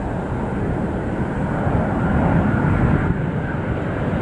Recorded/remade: recorded